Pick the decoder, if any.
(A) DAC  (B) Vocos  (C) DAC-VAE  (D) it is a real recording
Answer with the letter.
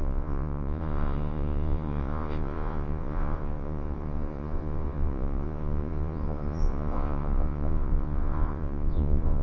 B